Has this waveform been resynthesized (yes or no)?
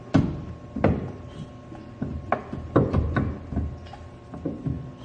no